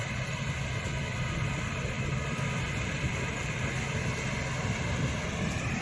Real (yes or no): no